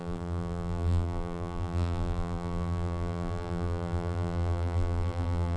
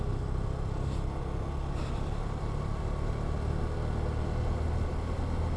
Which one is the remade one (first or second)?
first